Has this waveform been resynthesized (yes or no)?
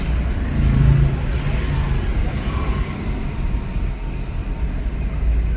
no